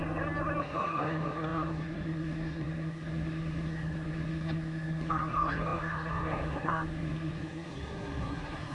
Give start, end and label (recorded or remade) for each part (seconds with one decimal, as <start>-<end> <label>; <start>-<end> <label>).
0.0-0.6 recorded; 0.6-8.7 remade